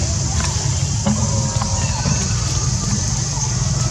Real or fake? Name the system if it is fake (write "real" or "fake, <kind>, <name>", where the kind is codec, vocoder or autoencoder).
real